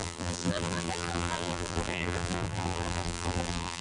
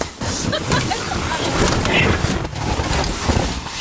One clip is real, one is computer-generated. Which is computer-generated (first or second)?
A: first